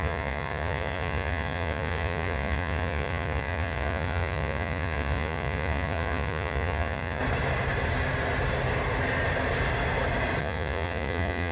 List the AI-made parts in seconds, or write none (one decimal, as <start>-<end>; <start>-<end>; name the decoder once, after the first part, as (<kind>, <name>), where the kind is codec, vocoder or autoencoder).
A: 0.0-7.2 (vocoder, Vocos); 10.4-11.5